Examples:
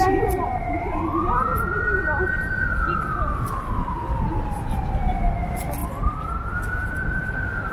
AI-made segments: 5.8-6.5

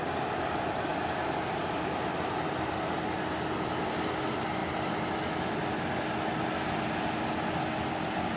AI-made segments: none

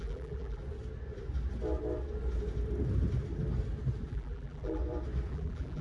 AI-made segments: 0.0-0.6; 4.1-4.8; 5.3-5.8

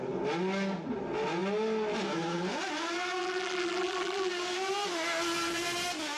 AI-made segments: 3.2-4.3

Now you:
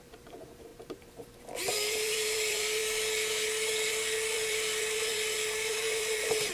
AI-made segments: 0.0-2.8; 3.9-6.5

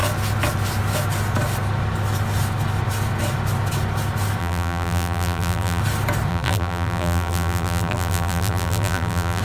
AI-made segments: 4.4-5.8; 6.3-9.4